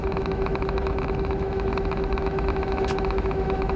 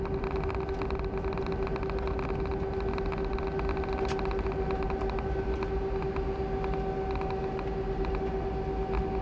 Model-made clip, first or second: first